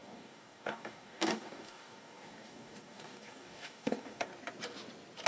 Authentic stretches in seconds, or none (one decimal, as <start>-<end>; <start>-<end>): 4.3-5.3

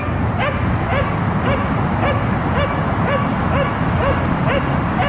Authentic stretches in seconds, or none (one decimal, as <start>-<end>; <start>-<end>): 0.0-5.1

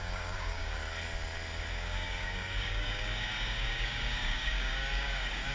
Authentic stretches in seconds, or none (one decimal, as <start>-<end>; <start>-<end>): 0.8-1.7

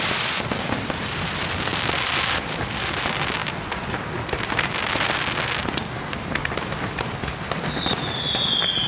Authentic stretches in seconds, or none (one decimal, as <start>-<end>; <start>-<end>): 0.0-8.9